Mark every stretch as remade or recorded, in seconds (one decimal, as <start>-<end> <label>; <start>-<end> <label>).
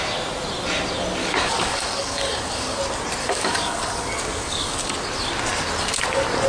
0.0-1.2 recorded; 1.2-2.8 remade; 2.8-3.2 recorded; 3.2-4.9 remade; 4.9-6.5 recorded